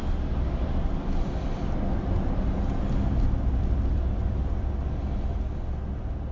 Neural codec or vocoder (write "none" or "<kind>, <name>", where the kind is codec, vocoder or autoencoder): none